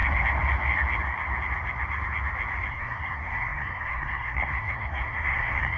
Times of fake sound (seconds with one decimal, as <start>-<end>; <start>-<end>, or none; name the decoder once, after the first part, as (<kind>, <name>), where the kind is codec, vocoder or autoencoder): 2.7-5.8 (codec, SNAC)